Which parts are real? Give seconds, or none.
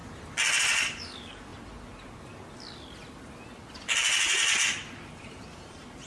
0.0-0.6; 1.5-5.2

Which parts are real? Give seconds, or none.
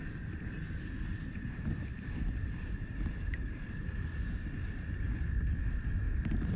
none